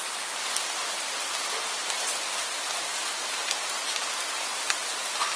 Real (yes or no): yes